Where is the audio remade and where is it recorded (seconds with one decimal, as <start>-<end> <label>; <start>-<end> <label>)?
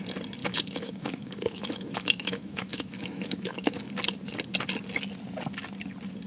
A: 0.0-0.4 recorded; 0.4-3.9 remade; 3.9-6.3 recorded